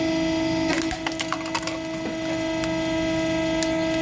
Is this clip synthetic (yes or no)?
no